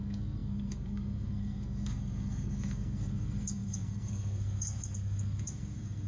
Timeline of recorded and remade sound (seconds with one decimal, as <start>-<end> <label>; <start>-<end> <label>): 0.0-6.1 remade

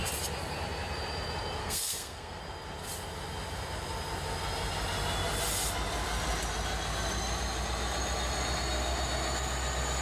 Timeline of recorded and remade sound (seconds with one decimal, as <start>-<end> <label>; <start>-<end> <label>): 0.0-1.6 recorded; 1.6-2.4 remade; 2.4-10.0 recorded

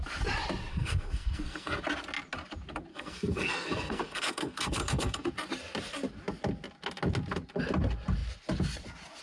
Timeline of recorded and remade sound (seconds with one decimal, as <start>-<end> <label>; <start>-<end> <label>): 0.0-0.7 recorded; 0.7-1.8 remade; 1.8-2.9 recorded; 2.9-5.3 remade; 5.3-9.2 recorded

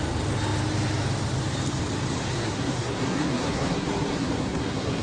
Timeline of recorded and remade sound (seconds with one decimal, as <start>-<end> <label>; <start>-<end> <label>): 0.0-2.3 recorded; 2.3-5.0 remade

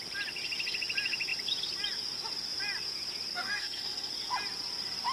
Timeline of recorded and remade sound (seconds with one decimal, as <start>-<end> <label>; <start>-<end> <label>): 0.0-3.3 recorded; 3.3-4.1 remade; 4.1-5.1 recorded

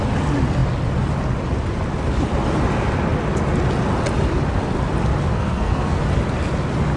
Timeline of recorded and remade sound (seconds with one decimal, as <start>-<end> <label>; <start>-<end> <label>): 0.0-5.3 recorded; 5.3-6.0 remade; 6.0-7.0 recorded